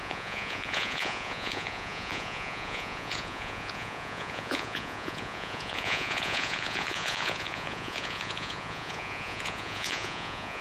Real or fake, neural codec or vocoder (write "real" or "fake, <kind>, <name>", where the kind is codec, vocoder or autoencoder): fake, vocoder, Vocos